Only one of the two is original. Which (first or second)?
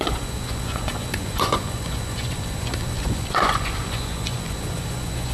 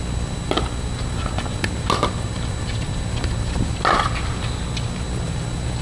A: second